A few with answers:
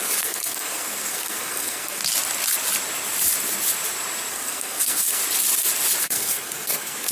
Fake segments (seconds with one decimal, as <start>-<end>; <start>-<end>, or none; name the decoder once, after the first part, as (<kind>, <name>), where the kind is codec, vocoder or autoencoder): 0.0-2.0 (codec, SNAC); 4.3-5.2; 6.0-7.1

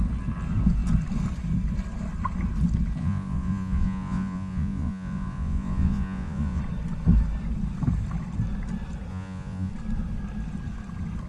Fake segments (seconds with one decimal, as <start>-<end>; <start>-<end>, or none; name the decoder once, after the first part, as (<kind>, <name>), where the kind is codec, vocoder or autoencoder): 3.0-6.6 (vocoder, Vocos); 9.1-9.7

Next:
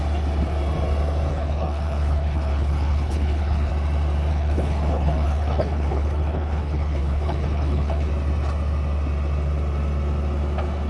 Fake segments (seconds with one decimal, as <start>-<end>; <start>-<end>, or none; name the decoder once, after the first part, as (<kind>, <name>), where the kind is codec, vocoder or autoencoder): 1.3-3.7 (codec, HILCodec); 4.3-8.1

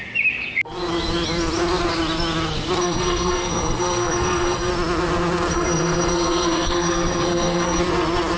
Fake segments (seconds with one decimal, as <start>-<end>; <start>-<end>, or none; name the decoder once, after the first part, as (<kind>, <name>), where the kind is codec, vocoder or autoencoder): 2.8-4.7 (codec, SNAC); 5.5-7.8